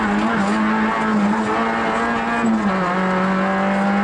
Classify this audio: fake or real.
real